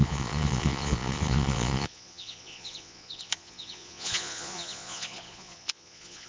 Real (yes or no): no